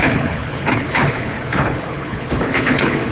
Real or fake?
fake